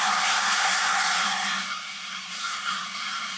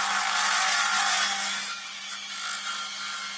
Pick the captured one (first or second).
second